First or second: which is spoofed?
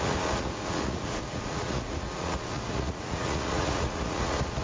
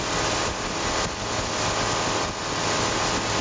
first